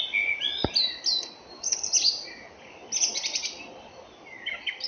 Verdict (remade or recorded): recorded